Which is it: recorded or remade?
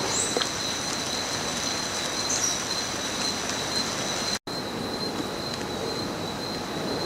recorded